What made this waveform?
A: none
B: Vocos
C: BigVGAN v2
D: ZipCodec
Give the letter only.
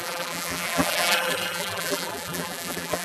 C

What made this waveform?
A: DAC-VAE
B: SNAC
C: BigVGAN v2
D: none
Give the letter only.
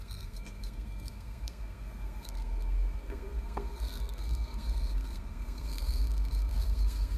B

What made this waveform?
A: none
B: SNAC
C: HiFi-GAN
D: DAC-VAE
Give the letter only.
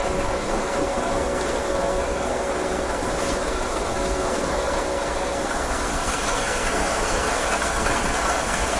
B